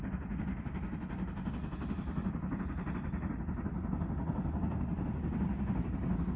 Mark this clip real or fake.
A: real